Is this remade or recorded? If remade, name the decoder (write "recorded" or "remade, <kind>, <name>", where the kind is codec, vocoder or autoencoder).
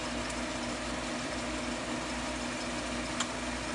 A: recorded